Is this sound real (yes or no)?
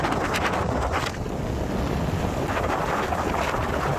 yes